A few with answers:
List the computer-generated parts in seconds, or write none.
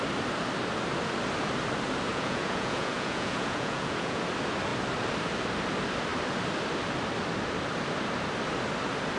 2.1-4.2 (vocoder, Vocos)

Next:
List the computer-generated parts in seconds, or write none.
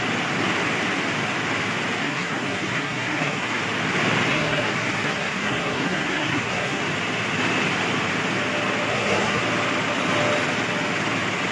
2.0-3.6 (codec, SNAC); 4.3-6.8; 8.9-9.4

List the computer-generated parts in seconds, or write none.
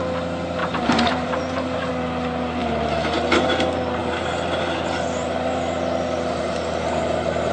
0.6-1.9 (vocoder, BigVGAN v2); 2.6-3.5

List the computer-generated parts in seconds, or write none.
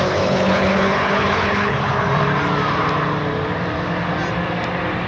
0.0-1.9 (codec, HILCodec)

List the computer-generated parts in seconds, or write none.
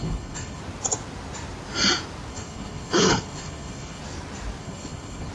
0.0-0.6 (codec, HILCodec); 2.3-4.0; 4.6-5.3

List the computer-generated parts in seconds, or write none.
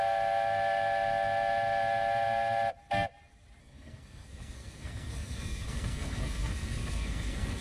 3.6-7.6 (codec, SNAC)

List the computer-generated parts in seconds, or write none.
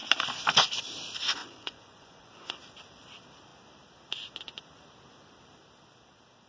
1.4-2.5 (vocoder, Vocos)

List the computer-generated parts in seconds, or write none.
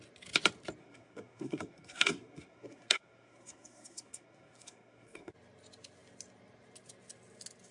0.8-5.3 (codec, SNAC)